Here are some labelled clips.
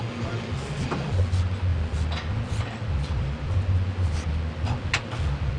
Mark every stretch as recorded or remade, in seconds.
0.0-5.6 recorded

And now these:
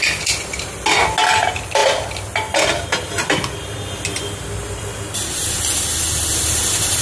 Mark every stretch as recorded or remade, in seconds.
0.0-7.0 recorded

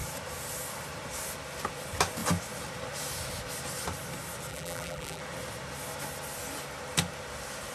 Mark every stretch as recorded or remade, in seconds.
0.0-4.5 recorded; 4.5-5.2 remade; 5.2-7.7 recorded

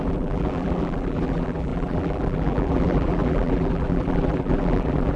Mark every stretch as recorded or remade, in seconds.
0.0-5.2 remade

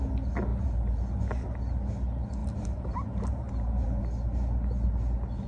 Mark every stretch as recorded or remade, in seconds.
0.0-0.5 recorded; 0.5-1.2 remade; 1.2-2.4 recorded; 2.4-4.0 remade; 4.0-5.5 recorded

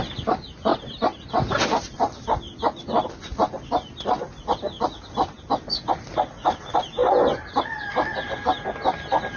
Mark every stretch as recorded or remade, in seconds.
0.0-0.7 recorded; 0.7-1.3 remade; 1.3-9.4 recorded